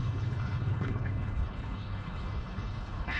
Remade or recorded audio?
remade